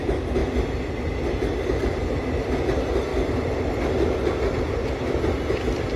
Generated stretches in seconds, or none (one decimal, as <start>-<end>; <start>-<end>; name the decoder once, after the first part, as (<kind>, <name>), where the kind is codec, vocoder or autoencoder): none